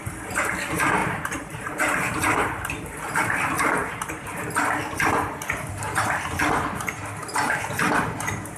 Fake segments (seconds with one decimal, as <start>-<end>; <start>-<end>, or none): 1.0-2.7; 7.2-7.8

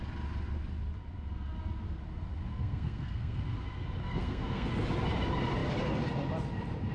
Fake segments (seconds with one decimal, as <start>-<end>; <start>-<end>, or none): 2.5-3.4; 4.0-4.7